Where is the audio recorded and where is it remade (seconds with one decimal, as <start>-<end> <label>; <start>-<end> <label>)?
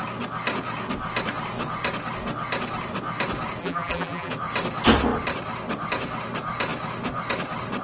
0.0-3.6 recorded; 3.6-4.3 remade; 4.3-7.8 recorded